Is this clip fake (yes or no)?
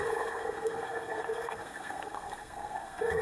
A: yes